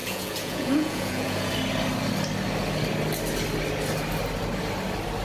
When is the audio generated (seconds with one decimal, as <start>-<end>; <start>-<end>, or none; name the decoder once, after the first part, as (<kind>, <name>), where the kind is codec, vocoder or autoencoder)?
0.0-1.5 (vocoder, Vocos)